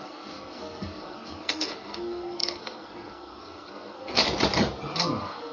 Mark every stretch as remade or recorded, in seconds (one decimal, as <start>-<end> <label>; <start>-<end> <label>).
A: 0.0-4.2 remade; 4.2-5.0 recorded; 5.0-5.5 remade